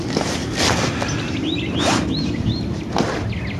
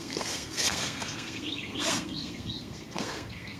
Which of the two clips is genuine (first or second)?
first